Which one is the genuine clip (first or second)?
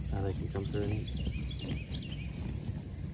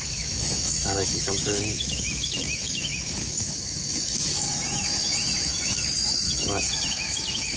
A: first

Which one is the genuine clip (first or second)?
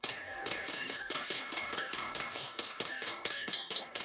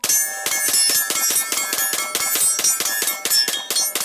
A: second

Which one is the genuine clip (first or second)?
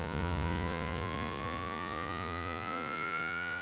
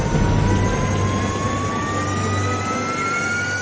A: second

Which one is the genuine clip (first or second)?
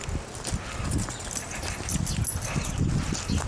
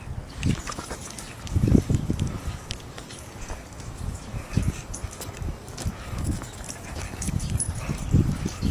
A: first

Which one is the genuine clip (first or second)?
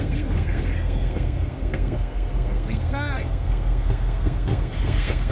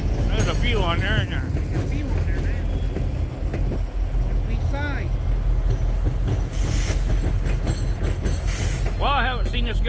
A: second